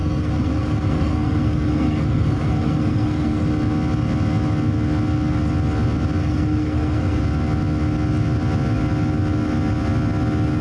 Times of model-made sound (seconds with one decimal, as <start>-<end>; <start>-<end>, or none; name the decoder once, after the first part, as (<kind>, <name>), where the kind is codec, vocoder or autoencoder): 0.0-3.5 (codec, SNAC); 6.2-7.2